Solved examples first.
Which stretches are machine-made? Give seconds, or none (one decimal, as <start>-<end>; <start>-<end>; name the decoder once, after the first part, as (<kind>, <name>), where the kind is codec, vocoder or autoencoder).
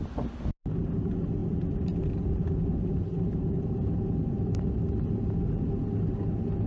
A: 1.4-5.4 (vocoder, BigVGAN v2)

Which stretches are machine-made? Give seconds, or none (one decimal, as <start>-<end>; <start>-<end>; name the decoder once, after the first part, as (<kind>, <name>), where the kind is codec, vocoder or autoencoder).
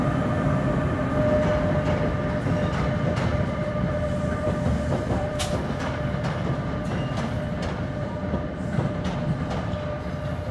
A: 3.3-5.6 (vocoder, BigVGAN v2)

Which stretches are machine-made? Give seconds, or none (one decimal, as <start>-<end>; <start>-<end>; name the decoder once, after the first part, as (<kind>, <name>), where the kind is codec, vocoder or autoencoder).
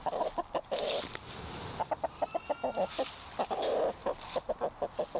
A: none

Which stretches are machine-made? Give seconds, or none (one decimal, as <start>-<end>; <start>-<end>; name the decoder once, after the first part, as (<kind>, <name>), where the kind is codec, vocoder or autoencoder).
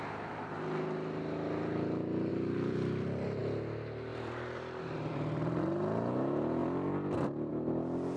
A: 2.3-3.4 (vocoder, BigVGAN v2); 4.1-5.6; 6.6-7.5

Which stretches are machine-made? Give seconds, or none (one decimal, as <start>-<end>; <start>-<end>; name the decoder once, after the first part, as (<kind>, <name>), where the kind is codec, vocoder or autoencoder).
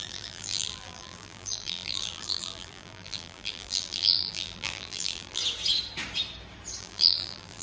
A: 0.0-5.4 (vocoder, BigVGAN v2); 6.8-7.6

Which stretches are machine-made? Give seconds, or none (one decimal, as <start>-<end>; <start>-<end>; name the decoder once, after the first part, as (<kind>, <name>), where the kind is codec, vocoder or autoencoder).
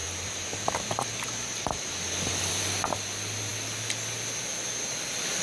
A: 0.0-2.6 (vocoder, BigVGAN v2)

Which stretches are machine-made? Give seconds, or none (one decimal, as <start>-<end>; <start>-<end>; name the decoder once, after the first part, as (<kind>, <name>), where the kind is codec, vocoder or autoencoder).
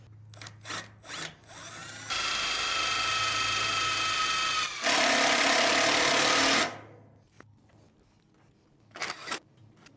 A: none